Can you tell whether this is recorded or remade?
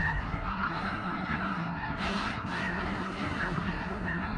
remade